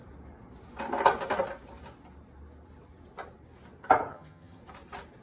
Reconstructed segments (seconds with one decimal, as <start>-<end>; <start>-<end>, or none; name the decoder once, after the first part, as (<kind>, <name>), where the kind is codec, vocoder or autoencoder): 4.1-4.6 (vocoder, HiFi-GAN)